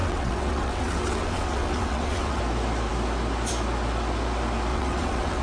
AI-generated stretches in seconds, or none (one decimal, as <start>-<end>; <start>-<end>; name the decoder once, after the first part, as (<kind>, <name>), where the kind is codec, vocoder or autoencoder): 0.0-2.4 (vocoder, WaveNeXt); 4.7-5.4